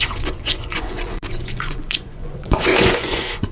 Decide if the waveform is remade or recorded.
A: remade